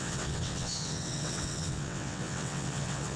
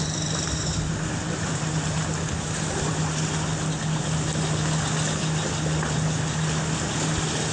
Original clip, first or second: second